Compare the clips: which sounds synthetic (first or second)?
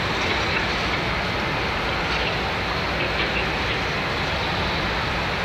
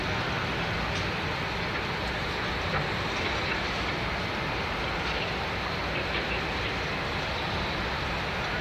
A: second